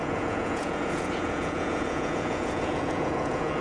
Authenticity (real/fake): fake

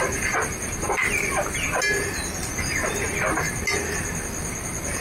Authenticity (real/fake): real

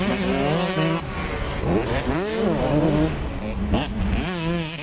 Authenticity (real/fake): real